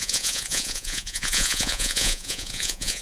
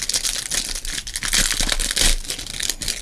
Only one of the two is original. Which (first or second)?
second